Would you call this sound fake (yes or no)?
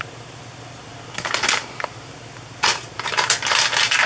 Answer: no